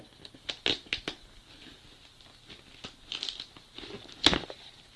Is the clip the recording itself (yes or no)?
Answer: yes